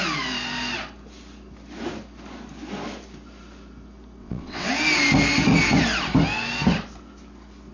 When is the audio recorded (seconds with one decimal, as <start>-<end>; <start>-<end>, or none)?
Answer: 0.0-4.2; 4.7-7.7